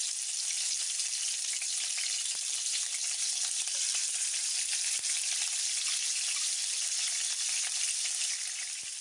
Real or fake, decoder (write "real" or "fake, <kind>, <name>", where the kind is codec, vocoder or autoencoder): real